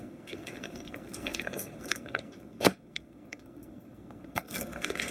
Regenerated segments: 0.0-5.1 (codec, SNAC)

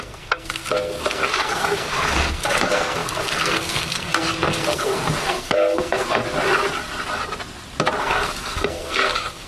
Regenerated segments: 0.0-6.2 (codec, SNAC); 8.0-9.5

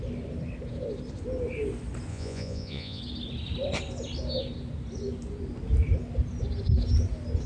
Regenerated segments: 2.1-3.0 (vocoder, Vocos)